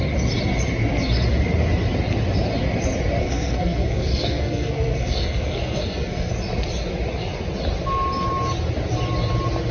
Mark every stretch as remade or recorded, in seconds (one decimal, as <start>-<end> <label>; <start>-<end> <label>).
0.0-3.2 recorded; 3.2-6.3 remade; 6.3-9.7 recorded